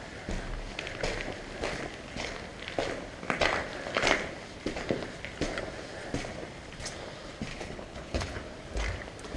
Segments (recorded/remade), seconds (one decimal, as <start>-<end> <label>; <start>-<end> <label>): 0.0-7.5 recorded; 7.5-8.4 remade; 8.4-9.4 recorded